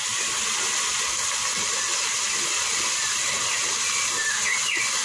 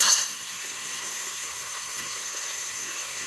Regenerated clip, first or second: second